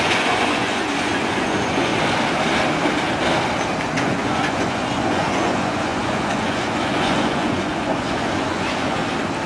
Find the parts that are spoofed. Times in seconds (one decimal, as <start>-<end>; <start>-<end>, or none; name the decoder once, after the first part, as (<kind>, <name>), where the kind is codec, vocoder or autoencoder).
0.0-1.9 (vocoder, Vocos); 4.0-9.0